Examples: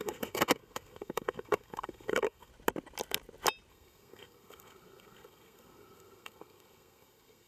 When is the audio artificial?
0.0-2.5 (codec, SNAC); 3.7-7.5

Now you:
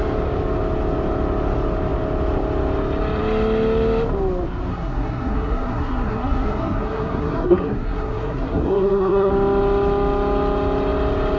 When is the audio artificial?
4.7-9.3 (codec, SNAC)

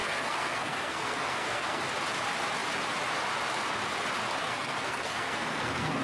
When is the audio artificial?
0.0-1.8 (codec, SNAC); 4.4-6.0

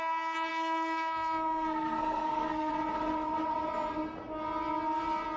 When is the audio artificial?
0.5-2.7 (codec, SNAC)